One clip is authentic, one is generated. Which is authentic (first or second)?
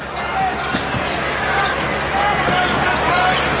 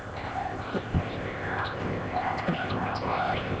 first